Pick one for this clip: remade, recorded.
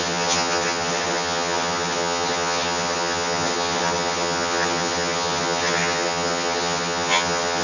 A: remade